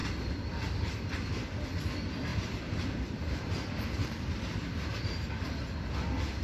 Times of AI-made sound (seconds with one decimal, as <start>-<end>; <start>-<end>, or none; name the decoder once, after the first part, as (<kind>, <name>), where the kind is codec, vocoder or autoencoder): 2.3-3.5 (vocoder, BigVGAN v2); 4.9-5.5